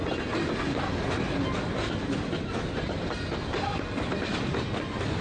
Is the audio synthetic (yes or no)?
no